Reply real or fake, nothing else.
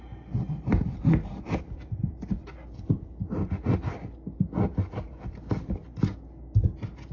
real